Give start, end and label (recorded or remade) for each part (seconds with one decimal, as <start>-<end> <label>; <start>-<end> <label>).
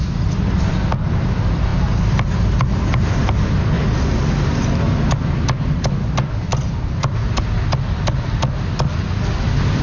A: 0.0-9.8 recorded